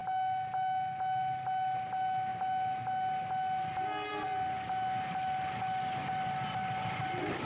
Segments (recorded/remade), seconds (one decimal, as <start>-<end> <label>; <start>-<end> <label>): 0.0-7.5 recorded